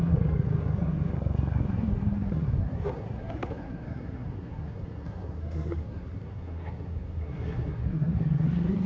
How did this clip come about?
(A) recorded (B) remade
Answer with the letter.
B